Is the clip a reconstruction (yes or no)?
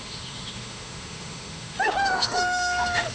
yes